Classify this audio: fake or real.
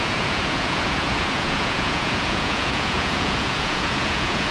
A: fake